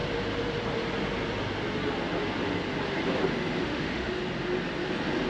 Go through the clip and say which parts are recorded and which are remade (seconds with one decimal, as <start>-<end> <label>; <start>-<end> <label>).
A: 0.0-3.6 recorded; 3.6-4.2 remade; 4.2-5.3 recorded